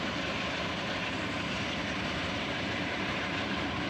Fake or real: fake